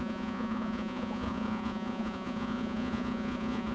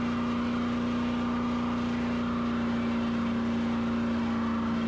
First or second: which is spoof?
first